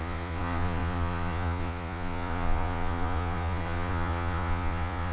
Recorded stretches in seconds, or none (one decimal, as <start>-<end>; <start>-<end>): none